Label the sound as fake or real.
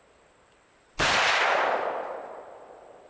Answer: real